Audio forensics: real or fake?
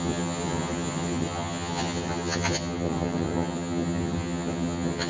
fake